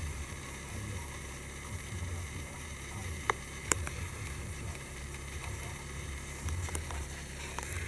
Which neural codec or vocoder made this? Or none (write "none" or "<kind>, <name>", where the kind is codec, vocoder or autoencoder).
vocoder, BigVGAN v2